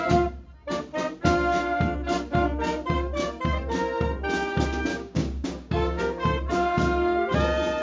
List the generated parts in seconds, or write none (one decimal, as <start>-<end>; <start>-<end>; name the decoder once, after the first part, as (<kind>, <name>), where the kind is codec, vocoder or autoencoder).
4.9-6.0 (codec, DAC)

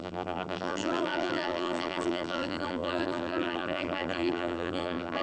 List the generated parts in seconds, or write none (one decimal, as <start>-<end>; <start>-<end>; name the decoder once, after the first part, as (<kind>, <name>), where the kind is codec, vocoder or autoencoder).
0.0-5.2 (vocoder, BigVGAN v2)

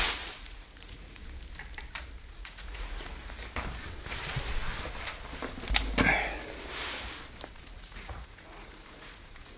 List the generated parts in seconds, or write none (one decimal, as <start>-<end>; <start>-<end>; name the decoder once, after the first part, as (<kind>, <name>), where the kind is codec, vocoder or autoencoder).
0.0-1.2 (vocoder, Vocos); 2.3-3.1; 7.5-9.6

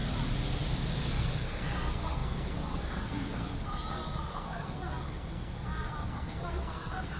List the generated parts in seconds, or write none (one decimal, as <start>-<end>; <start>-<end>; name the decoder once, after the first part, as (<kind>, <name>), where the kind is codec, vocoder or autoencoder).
1.1-7.2 (codec, SNAC)

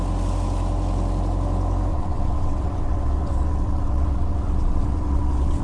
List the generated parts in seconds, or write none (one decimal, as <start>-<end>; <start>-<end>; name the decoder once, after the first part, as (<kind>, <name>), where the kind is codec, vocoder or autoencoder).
1.9-5.6 (vocoder, WaveNeXt)

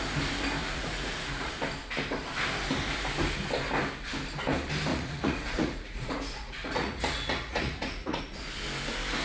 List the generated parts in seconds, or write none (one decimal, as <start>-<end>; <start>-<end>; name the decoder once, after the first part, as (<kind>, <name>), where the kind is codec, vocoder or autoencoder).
0.6-1.5 (vocoder, Vocos); 4.9-8.2

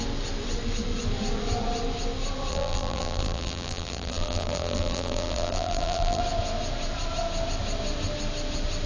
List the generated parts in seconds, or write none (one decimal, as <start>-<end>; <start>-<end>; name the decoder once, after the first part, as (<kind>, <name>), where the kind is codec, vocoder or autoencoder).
2.5-6.2 (vocoder, BigVGAN v2)